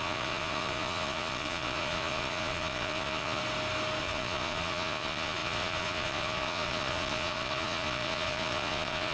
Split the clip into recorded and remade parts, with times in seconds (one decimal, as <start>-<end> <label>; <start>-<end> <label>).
0.0-3.4 remade; 3.4-4.0 recorded; 4.0-9.1 remade